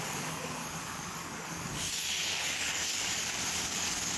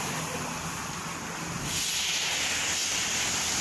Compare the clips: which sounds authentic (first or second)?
second